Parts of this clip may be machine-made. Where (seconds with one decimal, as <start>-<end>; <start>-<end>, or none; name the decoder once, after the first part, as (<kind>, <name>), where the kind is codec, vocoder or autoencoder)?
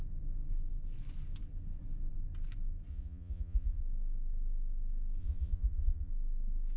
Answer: 2.9-3.8 (vocoder, Vocos); 5.2-6.1